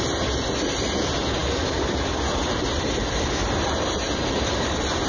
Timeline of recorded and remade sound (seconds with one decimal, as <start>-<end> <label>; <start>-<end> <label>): 0.0-5.1 recorded